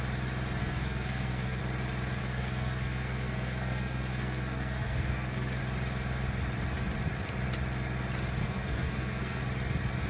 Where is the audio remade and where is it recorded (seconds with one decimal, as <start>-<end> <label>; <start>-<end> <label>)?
0.0-0.6 recorded; 0.6-1.6 remade; 1.6-2.2 recorded; 2.2-5.6 remade; 5.6-8.4 recorded; 8.4-9.4 remade; 9.4-10.1 recorded